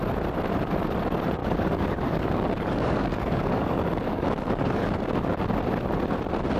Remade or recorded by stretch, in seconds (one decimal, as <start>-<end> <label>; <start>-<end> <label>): 0.0-1.4 recorded; 1.4-5.4 remade; 5.4-6.6 recorded